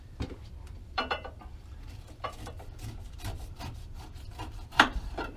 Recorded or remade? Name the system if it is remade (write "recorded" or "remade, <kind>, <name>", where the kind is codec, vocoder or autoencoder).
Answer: remade, vocoder, BigVGAN v2